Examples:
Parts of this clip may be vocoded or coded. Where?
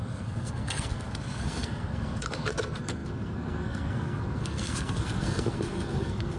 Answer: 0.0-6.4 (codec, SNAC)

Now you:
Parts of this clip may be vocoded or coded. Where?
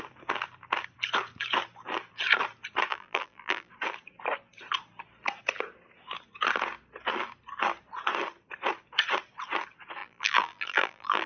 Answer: 2.9-3.7 (vocoder, BigVGAN v2); 10.0-11.3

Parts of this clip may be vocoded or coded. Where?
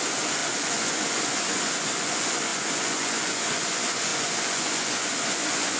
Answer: 0.0-5.8 (vocoder, Vocos)